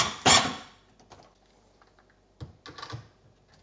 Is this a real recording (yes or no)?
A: yes